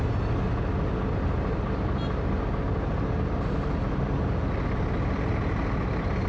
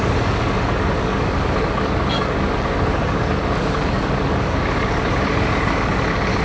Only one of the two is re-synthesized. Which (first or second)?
second